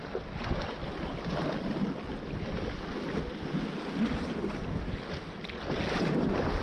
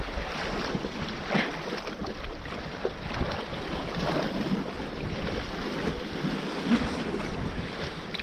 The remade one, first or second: second